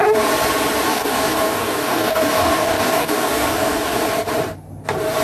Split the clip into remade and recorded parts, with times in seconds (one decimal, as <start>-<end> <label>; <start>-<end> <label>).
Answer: 0.0-0.9 recorded; 0.9-4.0 remade; 4.0-5.2 recorded